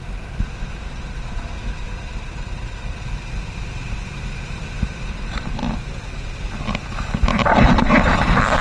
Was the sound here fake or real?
real